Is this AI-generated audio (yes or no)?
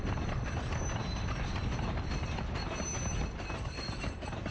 no